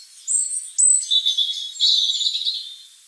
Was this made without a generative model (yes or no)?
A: yes